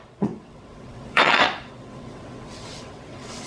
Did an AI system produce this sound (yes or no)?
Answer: yes